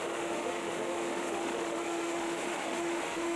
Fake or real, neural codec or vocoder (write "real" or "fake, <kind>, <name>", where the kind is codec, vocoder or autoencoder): fake, autoencoder, DAC-VAE